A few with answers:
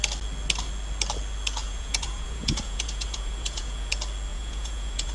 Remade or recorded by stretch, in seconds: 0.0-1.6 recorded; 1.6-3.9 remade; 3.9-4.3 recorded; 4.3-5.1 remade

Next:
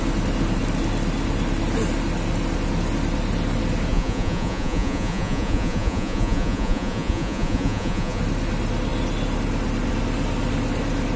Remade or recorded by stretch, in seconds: 0.0-3.9 recorded; 3.9-8.2 remade; 8.2-11.2 recorded

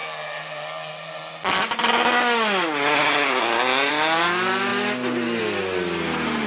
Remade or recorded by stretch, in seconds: 0.0-6.5 recorded

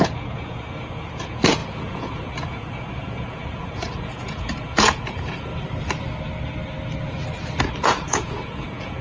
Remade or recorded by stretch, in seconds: 0.0-5.5 remade; 5.5-7.6 recorded; 7.6-9.0 remade

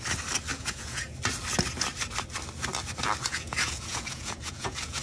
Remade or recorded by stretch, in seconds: 0.0-0.5 recorded; 0.5-1.1 remade; 1.1-3.3 recorded; 3.3-5.0 remade

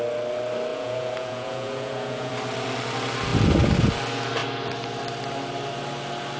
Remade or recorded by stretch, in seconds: 0.0-0.7 recorded; 0.7-2.3 remade; 2.3-6.4 recorded

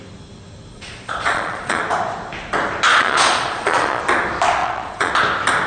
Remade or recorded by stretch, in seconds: 0.0-0.7 recorded; 0.7-1.8 remade; 1.8-2.9 recorded; 2.9-4.0 remade; 4.0-4.6 recorded; 4.6-5.1 remade; 5.1-5.7 recorded

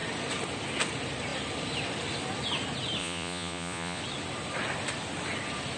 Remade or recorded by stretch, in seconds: 0.0-3.0 recorded; 3.0-4.0 remade; 4.0-5.8 recorded